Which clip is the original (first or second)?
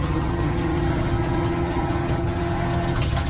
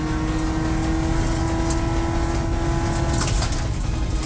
second